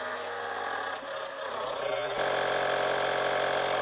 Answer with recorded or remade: recorded